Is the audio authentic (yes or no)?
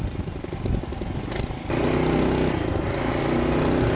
yes